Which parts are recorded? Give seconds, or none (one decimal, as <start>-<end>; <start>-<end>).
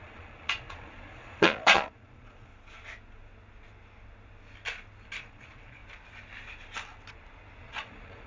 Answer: 2.5-5.2; 5.8-7.6